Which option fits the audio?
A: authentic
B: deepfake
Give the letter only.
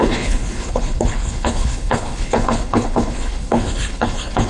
B